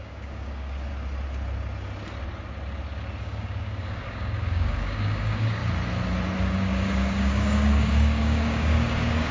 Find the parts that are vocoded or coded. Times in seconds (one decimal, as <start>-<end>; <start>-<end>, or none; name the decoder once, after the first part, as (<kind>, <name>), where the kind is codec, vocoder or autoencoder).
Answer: 0.0-0.9 (codec, DAC); 3.2-5.6; 6.4-9.3